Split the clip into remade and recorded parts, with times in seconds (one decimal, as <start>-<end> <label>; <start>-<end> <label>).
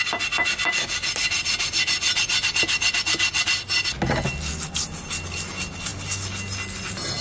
0.0-1.2 recorded; 1.2-4.5 remade; 4.5-7.2 recorded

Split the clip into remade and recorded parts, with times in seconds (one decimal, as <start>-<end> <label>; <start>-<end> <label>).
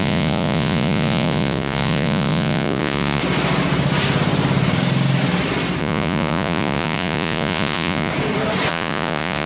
0.0-3.2 remade; 3.2-5.8 recorded; 5.8-8.1 remade; 8.1-8.7 recorded; 8.7-9.5 remade